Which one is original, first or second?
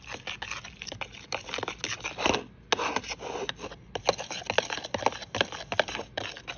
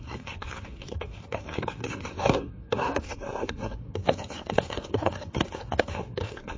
first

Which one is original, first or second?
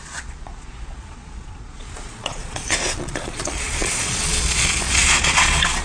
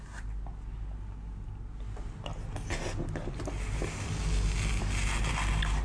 second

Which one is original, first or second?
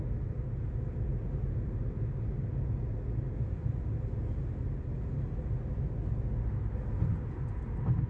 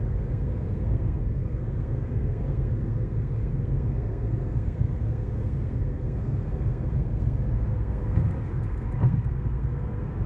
first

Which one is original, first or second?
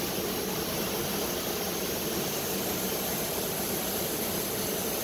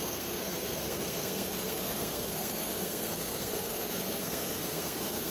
first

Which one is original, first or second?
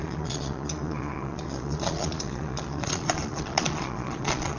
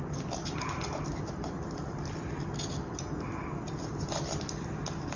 second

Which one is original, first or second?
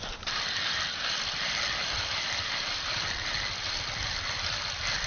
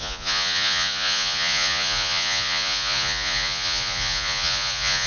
first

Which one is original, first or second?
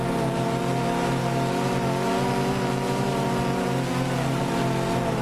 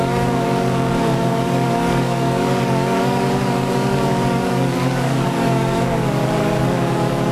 first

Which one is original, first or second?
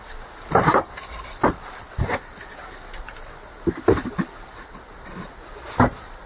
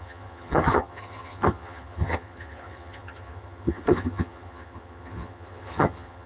first